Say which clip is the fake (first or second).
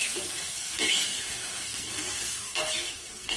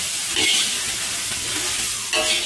first